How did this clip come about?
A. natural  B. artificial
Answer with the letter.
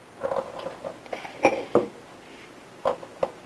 A